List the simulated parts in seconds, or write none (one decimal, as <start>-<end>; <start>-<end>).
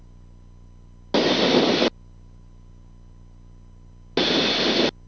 none